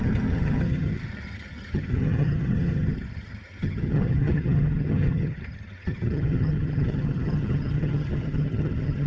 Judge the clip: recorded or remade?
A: remade